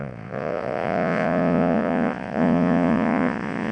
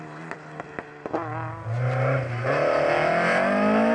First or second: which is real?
second